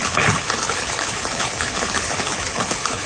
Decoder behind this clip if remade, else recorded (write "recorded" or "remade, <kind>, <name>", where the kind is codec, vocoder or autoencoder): remade, codec, HILCodec